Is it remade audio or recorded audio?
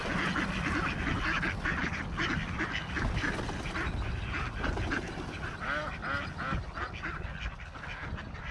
recorded